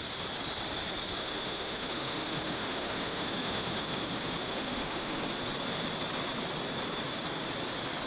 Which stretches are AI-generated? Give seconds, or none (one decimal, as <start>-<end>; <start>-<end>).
1.2-5.2